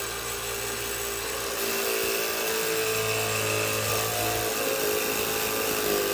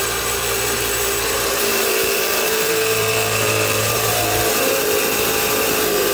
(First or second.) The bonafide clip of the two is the first